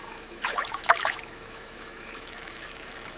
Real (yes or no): no